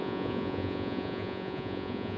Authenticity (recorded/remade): remade